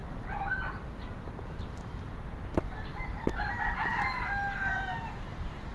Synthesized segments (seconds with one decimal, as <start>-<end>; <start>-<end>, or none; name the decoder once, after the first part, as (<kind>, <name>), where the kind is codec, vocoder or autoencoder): none